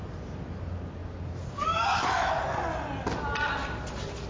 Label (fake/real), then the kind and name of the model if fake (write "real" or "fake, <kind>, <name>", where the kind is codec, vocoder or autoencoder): real